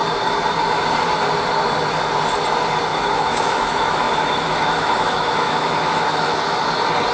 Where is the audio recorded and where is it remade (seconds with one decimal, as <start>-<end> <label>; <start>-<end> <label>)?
0.0-2.9 recorded; 2.9-6.6 remade; 6.6-7.1 recorded